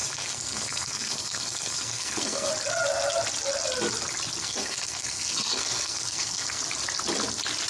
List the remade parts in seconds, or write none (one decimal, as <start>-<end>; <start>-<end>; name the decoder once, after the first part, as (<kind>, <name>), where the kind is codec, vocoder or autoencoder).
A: 0.0-2.5 (codec, SNAC); 4.4-6.6